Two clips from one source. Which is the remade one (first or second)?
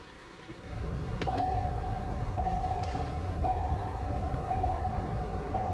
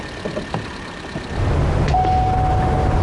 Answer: first